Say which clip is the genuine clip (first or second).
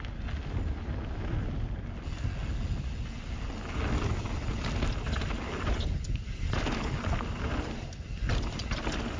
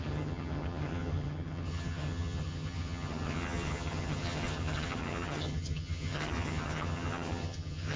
first